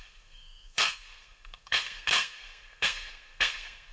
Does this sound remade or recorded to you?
remade